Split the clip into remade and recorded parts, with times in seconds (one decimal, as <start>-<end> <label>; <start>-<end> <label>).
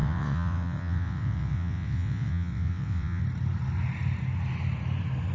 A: 0.0-3.2 remade; 3.2-5.3 recorded